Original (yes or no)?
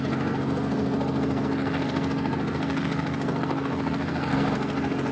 no